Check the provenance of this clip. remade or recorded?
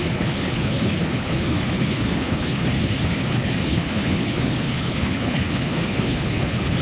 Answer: remade